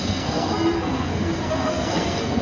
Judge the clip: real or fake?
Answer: fake